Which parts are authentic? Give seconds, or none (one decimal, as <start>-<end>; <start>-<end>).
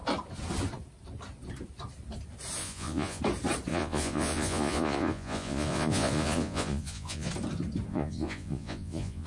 0.0-2.6; 3.2-3.7; 7.3-7.9